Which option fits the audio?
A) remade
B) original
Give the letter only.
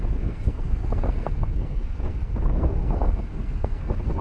A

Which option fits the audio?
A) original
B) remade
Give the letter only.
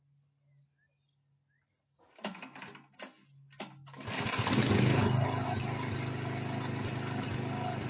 A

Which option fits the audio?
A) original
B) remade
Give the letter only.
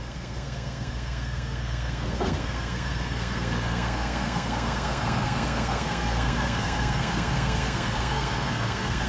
B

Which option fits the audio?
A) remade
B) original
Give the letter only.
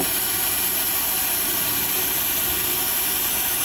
A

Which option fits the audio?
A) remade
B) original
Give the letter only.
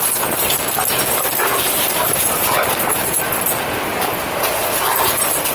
B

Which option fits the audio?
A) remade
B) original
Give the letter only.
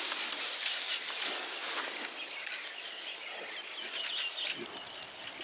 B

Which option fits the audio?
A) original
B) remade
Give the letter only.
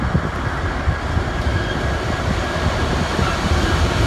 A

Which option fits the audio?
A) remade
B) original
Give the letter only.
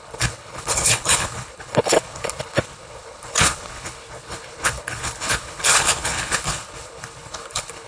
A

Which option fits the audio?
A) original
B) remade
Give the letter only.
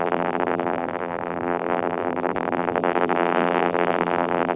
B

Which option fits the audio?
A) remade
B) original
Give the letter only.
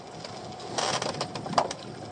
B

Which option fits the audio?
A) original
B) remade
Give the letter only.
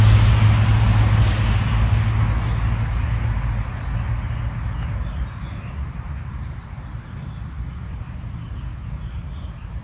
A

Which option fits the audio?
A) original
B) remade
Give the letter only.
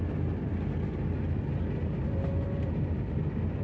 A